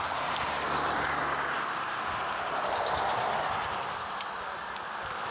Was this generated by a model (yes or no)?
no